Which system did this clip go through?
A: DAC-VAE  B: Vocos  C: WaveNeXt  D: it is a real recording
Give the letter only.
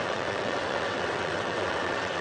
C